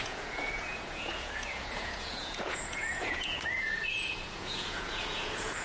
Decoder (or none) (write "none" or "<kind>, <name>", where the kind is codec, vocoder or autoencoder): vocoder, Vocos